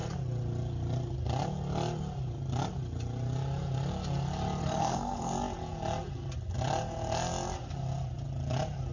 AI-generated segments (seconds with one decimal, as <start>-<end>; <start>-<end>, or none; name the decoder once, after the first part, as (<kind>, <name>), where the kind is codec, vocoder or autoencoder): 4.6-5.3 (codec, SNAC)